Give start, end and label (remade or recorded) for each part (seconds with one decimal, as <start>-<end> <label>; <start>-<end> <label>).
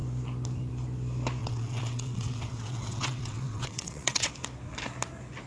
0.0-1.4 recorded; 1.4-4.3 remade; 4.3-5.5 recorded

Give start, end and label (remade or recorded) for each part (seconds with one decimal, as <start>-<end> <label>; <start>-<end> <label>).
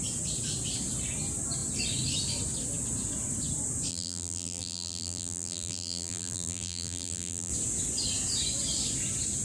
0.0-3.9 recorded; 3.9-7.5 remade; 7.5-9.4 recorded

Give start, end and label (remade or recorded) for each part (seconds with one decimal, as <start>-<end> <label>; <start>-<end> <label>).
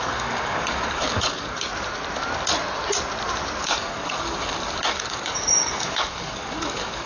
0.0-1.7 remade; 1.7-3.6 recorded; 3.6-7.1 remade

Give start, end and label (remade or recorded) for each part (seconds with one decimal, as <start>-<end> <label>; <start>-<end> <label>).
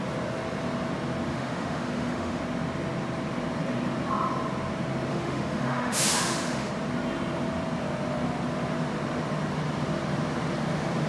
0.0-1.3 recorded; 1.3-2.4 remade; 2.4-5.1 recorded; 5.1-6.7 remade; 6.7-11.1 recorded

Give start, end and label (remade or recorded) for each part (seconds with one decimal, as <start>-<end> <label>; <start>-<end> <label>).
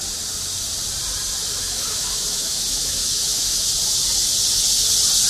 0.0-1.6 recorded; 1.6-3.7 remade; 3.7-5.3 recorded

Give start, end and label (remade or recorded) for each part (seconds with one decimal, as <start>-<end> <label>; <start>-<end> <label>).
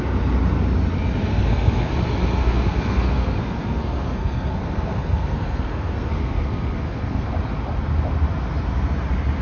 0.0-1.3 recorded; 1.3-1.9 remade; 1.9-2.4 recorded; 2.4-7.3 remade; 7.3-9.4 recorded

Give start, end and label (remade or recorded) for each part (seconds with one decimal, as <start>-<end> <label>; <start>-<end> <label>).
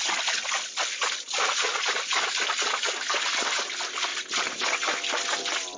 0.0-5.8 recorded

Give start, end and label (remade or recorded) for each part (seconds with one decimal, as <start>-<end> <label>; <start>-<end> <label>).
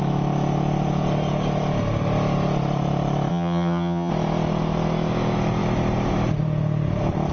0.0-3.3 recorded; 3.3-4.1 remade; 4.1-7.3 recorded